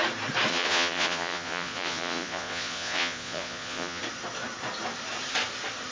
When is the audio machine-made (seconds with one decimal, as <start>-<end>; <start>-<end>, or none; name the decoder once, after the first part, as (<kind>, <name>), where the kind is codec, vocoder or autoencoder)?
0.5-4.0 (vocoder, Vocos)